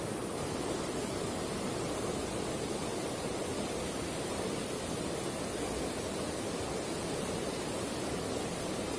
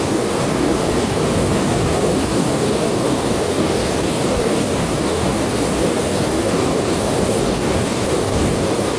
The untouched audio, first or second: first